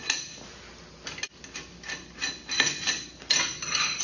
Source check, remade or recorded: recorded